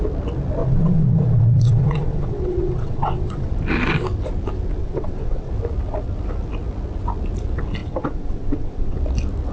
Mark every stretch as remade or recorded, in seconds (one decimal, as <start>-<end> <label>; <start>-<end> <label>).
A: 0.0-0.6 recorded; 0.6-3.5 remade; 3.5-4.8 recorded; 4.8-5.5 remade; 5.5-7.8 recorded; 7.8-9.0 remade; 9.0-9.5 recorded